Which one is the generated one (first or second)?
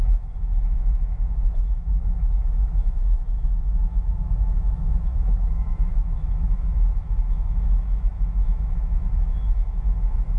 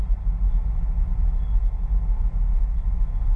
first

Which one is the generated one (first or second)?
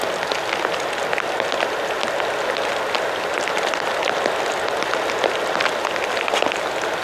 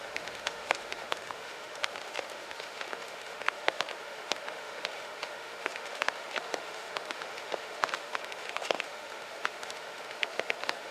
second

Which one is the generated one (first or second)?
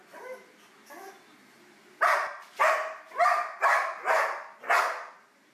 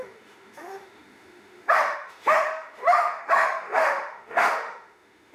second